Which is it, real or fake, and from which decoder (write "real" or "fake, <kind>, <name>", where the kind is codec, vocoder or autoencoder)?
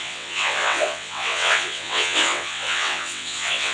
fake, vocoder, WaveNeXt